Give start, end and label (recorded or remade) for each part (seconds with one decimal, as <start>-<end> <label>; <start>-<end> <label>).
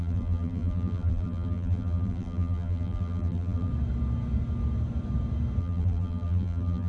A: 0.0-3.7 remade; 3.7-5.6 recorded; 5.6-6.9 remade